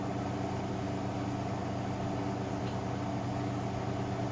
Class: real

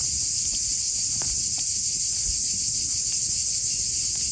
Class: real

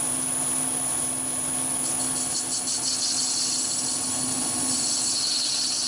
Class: real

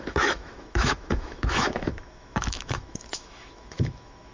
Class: fake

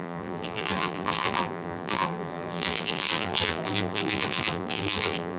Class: fake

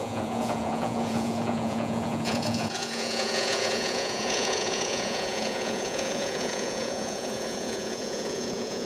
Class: fake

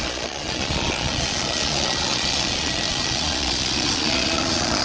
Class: fake